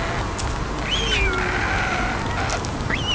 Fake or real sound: real